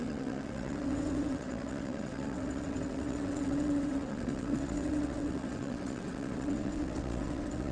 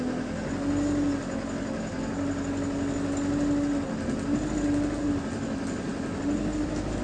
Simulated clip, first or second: first